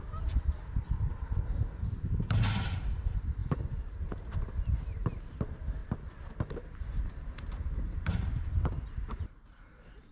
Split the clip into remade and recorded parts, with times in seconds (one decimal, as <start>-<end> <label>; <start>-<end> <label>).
0.0-5.8 remade; 5.8-6.8 recorded; 6.8-10.1 remade